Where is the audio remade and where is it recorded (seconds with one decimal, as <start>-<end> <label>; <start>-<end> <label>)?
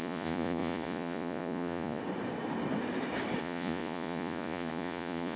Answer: 0.0-2.0 remade; 2.0-3.4 recorded; 3.4-5.4 remade